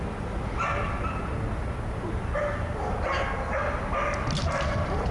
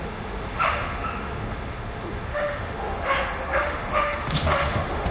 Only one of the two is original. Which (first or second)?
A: first